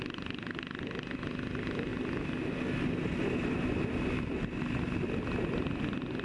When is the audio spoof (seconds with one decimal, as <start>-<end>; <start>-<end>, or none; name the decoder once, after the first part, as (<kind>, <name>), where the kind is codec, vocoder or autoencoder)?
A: none